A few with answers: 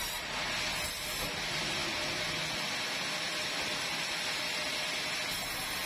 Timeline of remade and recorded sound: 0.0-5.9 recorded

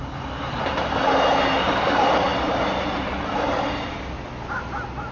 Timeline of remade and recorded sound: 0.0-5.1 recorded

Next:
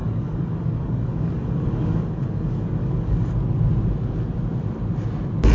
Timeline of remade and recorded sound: 0.0-3.3 remade; 3.3-5.5 recorded